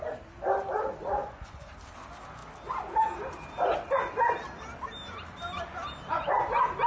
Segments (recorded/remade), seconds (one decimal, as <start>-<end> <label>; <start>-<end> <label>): 0.0-1.2 recorded; 1.2-1.7 remade; 1.7-6.9 recorded

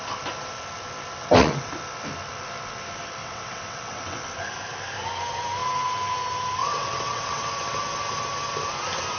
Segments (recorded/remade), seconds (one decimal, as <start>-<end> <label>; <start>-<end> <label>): 0.0-1.2 recorded; 1.2-1.7 remade; 1.7-3.2 recorded; 3.2-4.2 remade; 4.2-6.6 recorded; 6.6-7.5 remade; 7.5-9.2 recorded

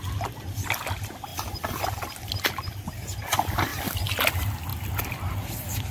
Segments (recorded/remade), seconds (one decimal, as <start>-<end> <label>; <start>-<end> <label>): 0.0-5.9 recorded

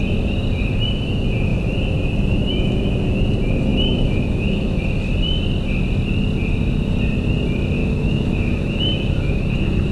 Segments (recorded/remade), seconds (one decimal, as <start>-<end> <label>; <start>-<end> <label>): 0.0-3.7 recorded; 3.7-4.8 remade; 4.8-7.8 recorded; 7.8-9.9 remade

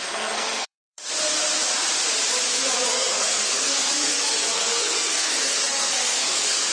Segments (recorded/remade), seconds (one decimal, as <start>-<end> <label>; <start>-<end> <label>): 0.0-1.1 remade; 1.1-2.9 recorded; 2.9-6.7 remade

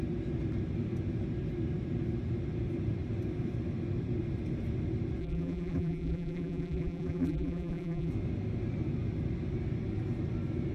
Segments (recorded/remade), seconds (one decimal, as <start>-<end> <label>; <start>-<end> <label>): 0.0-5.2 recorded; 5.2-8.1 remade; 8.1-10.7 recorded

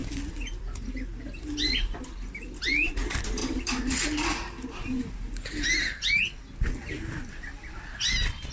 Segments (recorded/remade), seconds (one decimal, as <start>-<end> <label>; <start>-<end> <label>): 0.0-8.5 recorded

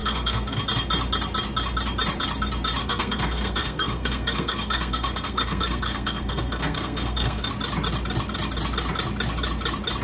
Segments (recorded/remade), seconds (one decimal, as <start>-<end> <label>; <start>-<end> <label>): 0.0-0.6 remade; 0.6-2.8 recorded; 2.8-7.5 remade; 7.5-10.0 recorded